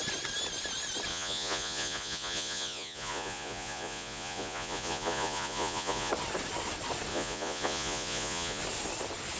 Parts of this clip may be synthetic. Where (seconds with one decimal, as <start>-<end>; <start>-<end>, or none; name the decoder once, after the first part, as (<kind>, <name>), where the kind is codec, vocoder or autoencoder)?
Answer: 1.1-6.1 (vocoder, Vocos); 7.1-8.6